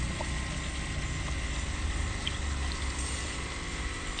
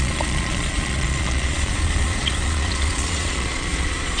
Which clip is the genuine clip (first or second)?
first